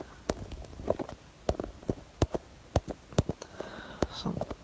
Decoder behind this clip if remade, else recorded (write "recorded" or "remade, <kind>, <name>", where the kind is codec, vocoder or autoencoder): recorded